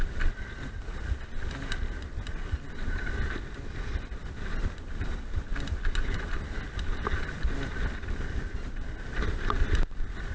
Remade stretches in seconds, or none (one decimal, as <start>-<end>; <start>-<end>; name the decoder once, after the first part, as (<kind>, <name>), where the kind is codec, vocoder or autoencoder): none